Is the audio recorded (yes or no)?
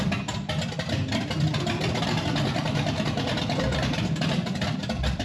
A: no